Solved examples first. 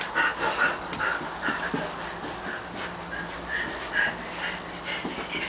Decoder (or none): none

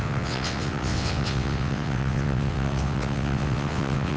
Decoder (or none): vocoder, WaveNeXt